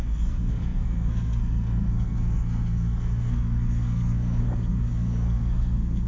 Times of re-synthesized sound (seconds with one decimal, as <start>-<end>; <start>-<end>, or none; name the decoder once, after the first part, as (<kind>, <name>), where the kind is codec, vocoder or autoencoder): 0.0-6.1 (codec, SNAC)